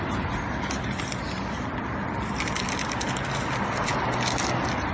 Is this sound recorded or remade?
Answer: recorded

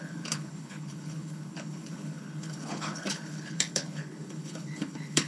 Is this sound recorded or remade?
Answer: remade